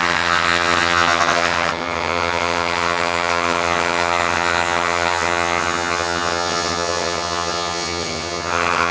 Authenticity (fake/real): fake